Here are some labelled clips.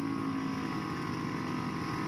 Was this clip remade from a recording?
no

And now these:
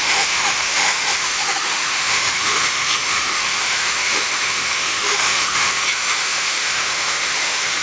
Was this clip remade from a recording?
yes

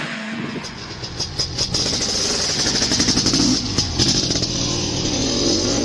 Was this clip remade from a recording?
yes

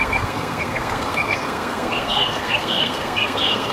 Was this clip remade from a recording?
yes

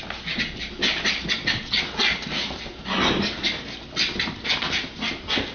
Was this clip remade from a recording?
no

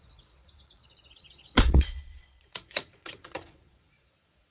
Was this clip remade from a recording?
yes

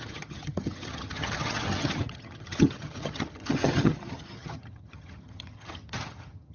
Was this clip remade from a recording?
yes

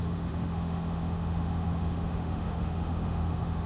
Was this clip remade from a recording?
yes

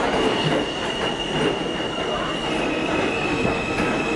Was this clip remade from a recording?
no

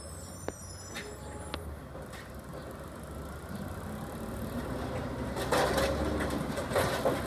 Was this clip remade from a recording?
no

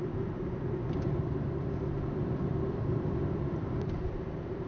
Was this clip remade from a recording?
yes